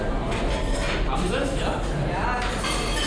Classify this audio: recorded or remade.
recorded